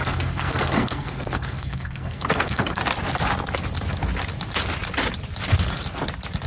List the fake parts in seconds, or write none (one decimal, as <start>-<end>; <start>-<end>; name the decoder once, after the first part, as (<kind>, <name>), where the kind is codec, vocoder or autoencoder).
0.0-2.8 (codec, SNAC)